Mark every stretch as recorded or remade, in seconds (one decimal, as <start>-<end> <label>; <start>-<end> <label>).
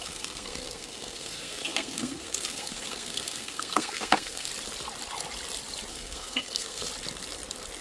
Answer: 0.0-4.5 remade; 4.5-5.9 recorded; 5.9-6.9 remade; 6.9-7.8 recorded